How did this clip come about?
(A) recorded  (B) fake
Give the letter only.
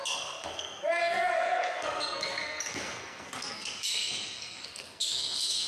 B